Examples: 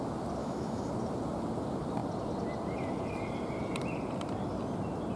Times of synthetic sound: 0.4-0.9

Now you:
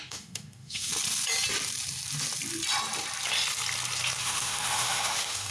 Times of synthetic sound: 0.0-0.9; 4.2-5.5

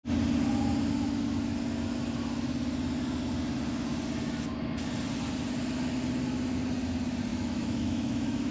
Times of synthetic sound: 7.3-8.5

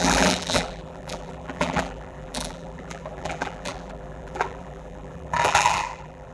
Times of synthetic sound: 0.0-6.3